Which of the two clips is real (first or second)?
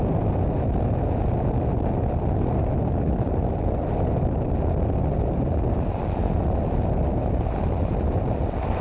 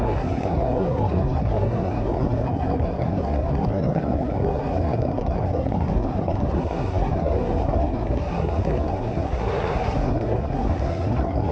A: first